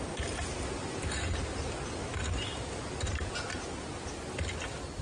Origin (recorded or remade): recorded